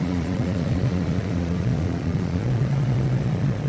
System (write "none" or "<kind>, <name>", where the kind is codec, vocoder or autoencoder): vocoder, Vocos